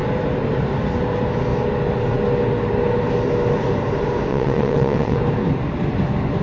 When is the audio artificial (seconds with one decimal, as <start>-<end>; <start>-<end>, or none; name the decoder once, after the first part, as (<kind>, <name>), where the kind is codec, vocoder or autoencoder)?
4.3-5.2 (vocoder, WaveNeXt)